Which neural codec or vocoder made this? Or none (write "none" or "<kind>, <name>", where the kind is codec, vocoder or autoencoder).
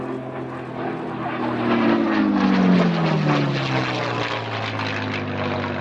none